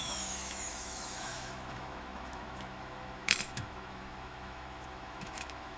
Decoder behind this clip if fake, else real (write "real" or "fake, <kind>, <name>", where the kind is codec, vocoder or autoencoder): fake, autoencoder, DAC-VAE